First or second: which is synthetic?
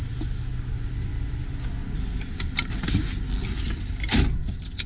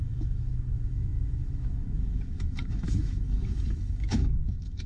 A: second